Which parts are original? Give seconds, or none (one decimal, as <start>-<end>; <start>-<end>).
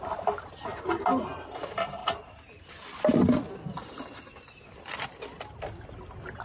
0.0-6.4